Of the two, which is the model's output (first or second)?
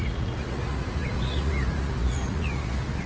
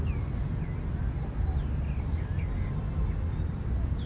first